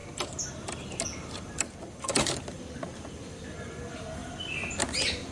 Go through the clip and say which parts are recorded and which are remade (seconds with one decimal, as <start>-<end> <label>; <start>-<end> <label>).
0.0-5.3 recorded